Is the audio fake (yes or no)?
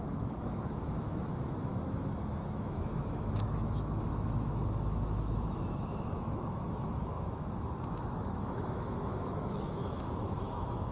yes